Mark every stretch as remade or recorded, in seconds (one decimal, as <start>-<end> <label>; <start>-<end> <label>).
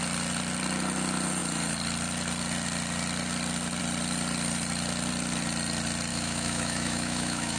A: 0.0-6.1 recorded; 6.1-7.6 remade